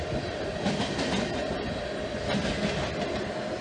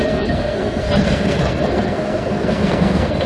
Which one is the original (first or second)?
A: first